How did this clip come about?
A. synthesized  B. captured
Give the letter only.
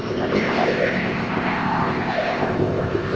A